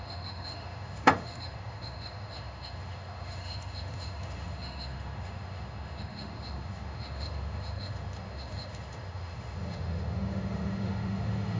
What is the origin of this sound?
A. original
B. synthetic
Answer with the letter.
B